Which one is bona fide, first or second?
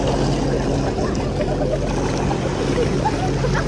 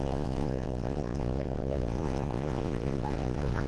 first